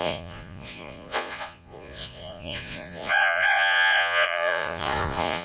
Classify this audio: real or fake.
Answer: fake